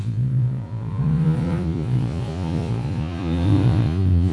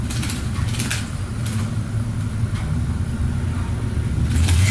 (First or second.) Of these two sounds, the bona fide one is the second